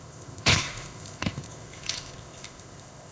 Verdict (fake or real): fake